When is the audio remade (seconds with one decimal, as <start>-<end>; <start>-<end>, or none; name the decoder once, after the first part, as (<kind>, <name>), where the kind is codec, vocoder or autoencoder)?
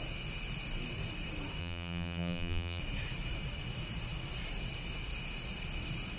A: 1.6-2.8 (vocoder, BigVGAN v2)